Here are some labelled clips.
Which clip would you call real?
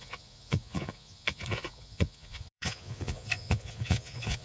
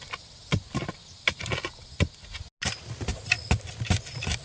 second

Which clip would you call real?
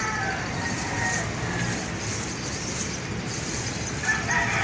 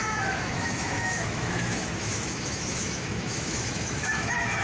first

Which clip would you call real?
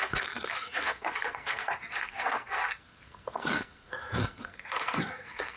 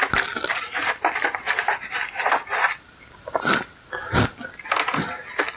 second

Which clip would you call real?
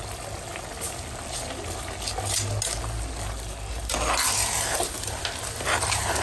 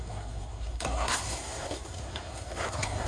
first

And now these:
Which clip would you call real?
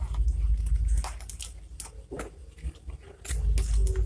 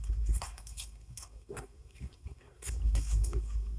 first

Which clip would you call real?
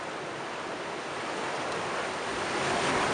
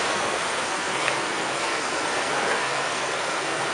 first